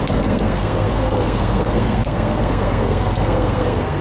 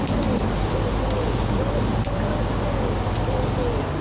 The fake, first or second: first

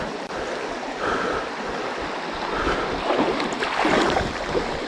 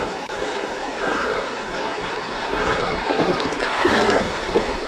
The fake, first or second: second